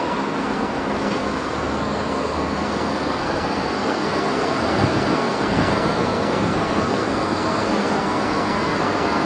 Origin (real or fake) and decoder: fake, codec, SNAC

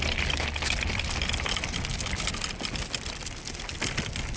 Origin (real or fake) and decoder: real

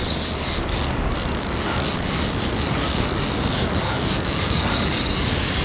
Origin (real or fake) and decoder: fake, codec, DAC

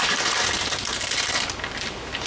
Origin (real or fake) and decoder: real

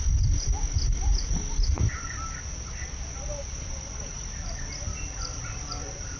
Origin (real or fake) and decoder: real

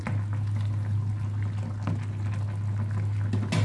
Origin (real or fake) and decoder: real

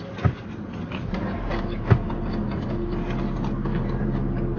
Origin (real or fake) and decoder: real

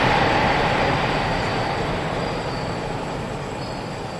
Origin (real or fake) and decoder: real